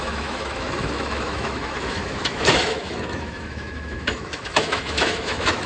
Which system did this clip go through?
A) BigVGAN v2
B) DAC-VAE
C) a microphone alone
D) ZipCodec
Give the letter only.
B